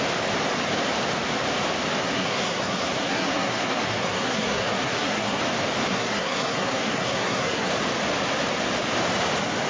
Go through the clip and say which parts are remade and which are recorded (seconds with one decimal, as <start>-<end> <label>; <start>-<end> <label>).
0.0-2.0 recorded; 2.0-5.4 remade; 5.4-5.9 recorded; 5.9-7.7 remade; 7.7-9.7 recorded